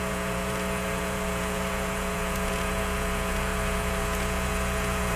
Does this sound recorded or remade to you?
remade